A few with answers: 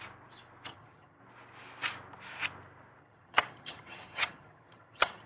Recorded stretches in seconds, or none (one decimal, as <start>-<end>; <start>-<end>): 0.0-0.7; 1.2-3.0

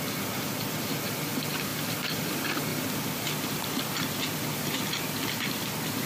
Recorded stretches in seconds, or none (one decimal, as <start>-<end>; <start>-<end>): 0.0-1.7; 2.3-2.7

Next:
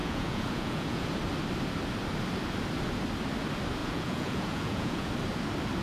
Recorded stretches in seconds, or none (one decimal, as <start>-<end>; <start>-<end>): 1.1-3.8; 5.1-5.8